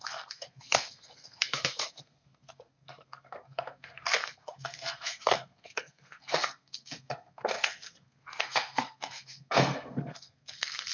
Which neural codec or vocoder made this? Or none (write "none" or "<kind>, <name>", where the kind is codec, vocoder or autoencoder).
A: codec, SNAC